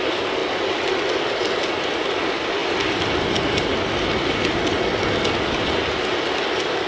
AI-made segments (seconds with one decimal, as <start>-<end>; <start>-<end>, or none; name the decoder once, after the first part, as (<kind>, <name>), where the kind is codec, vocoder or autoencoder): none